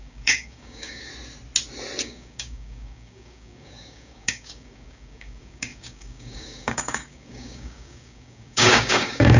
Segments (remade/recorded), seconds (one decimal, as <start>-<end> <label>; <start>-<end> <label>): 0.0-1.1 remade; 1.1-2.0 recorded; 2.0-9.4 remade